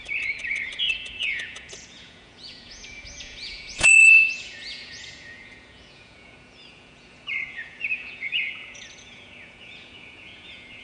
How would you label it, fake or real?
fake